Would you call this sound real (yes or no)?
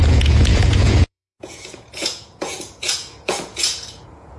no